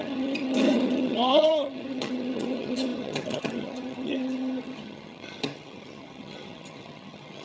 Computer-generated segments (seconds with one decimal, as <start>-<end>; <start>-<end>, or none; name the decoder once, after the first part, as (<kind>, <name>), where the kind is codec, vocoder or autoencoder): 0.0-7.4 (vocoder, HiFi-GAN)